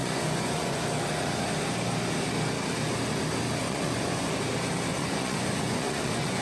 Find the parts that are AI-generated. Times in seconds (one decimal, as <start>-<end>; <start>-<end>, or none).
0.0-0.8; 3.6-4.4; 4.9-6.4